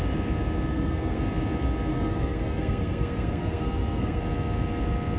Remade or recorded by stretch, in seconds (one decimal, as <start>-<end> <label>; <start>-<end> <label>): 0.0-0.7 recorded; 0.7-1.2 remade; 1.2-1.9 recorded; 1.9-4.2 remade; 4.2-5.2 recorded